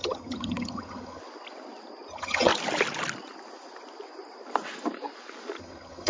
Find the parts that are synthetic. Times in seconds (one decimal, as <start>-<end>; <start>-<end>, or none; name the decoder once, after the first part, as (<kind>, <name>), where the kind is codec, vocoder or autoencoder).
0.0-1.2 (vocoder, HiFi-GAN); 2.1-2.5; 5.6-6.1